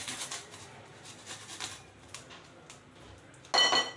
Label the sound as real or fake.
real